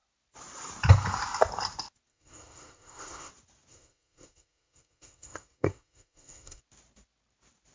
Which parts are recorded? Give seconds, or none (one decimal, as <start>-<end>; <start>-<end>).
0.0-2.1; 3.3-3.7; 6.6-7.7